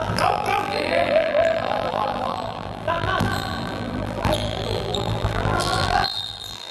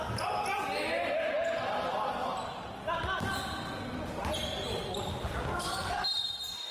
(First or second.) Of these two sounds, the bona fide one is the second